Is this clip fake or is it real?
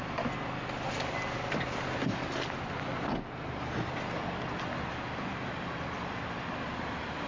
real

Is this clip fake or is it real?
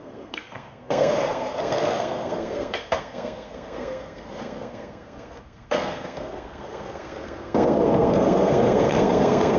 fake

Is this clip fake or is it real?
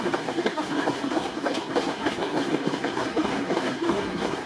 fake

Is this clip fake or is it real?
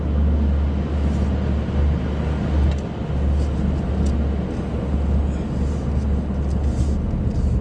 real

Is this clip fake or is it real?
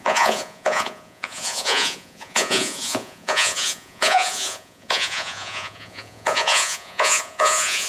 fake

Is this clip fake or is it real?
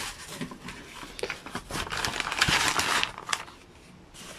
real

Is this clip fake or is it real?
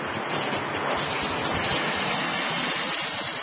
real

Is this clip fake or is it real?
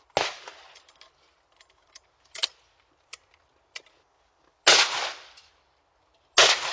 real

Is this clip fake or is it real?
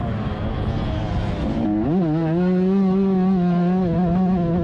real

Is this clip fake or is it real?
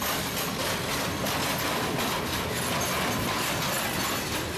real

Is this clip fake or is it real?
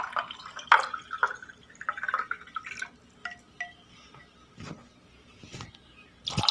real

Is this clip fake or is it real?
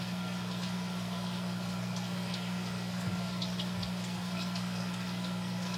fake